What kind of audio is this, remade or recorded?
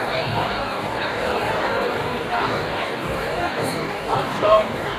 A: remade